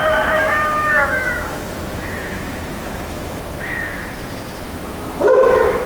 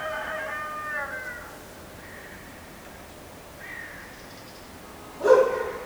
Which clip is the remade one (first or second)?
first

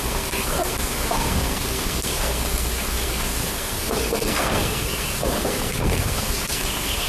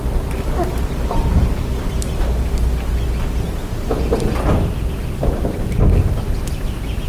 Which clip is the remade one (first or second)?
first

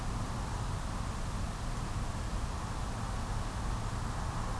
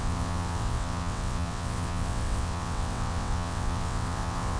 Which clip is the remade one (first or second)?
second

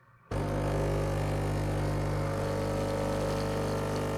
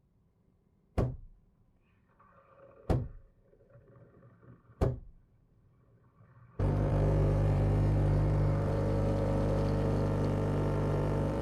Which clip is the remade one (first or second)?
second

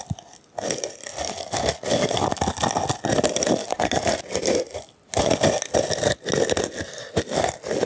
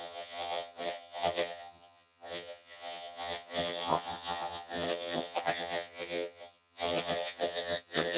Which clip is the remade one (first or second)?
second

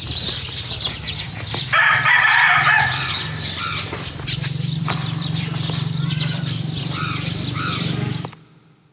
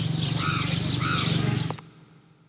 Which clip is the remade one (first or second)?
first